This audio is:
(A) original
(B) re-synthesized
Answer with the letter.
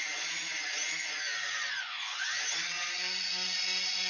B